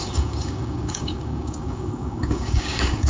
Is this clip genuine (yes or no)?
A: no